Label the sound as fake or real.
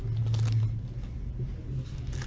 real